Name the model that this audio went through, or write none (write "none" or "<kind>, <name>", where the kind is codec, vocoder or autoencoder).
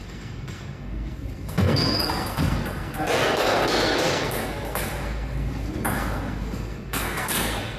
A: codec, SNAC